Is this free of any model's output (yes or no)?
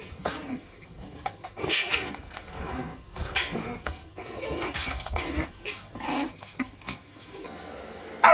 no